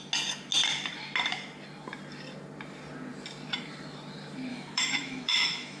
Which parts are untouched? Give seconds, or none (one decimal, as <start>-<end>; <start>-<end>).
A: 0.0-4.5